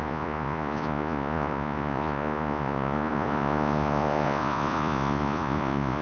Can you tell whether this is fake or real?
fake